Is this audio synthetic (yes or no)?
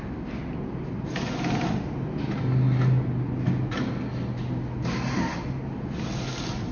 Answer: no